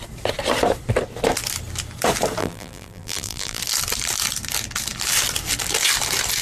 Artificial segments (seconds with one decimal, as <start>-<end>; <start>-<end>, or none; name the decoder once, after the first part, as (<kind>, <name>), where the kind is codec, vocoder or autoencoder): 2.4-3.6 (vocoder, BigVGAN v2)